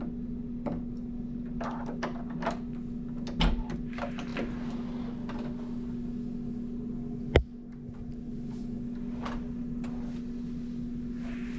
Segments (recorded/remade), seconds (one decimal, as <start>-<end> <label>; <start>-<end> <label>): 0.0-11.6 recorded